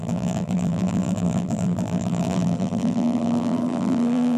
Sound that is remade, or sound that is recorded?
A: remade